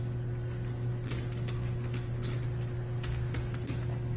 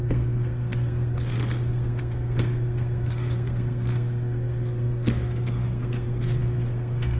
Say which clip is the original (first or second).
first